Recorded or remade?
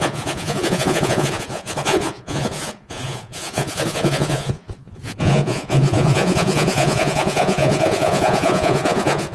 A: remade